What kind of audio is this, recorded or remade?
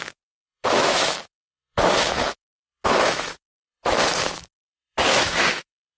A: remade